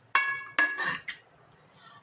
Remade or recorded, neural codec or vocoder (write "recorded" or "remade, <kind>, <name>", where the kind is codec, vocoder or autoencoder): recorded